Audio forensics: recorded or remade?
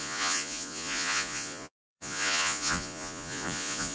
remade